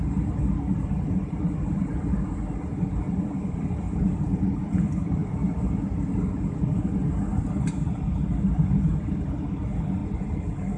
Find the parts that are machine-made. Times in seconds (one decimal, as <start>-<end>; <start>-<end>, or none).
none